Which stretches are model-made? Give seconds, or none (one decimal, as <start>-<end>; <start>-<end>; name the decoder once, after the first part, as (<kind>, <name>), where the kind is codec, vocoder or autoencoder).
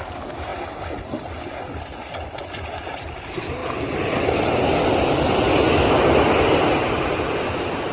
none